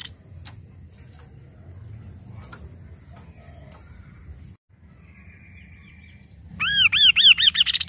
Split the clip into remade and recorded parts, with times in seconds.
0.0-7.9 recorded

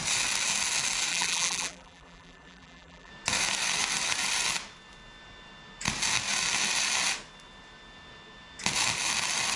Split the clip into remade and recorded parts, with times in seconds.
0.0-1.1 recorded; 1.1-3.1 remade; 3.1-9.6 recorded

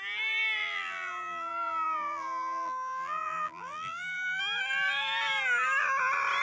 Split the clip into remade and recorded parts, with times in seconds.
0.0-0.6 recorded; 0.6-4.4 remade; 4.4-6.4 recorded

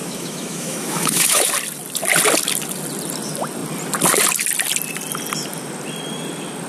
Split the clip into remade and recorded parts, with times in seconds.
0.0-1.5 remade; 1.5-6.7 recorded

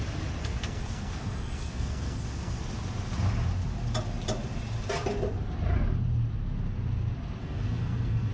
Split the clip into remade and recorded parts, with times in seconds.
0.0-0.4 recorded; 0.4-2.6 remade; 2.6-7.4 recorded; 7.4-8.3 remade

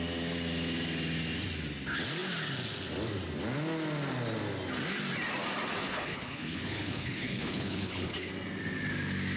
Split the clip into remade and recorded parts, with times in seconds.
0.0-5.8 recorded; 5.8-8.3 remade; 8.3-9.4 recorded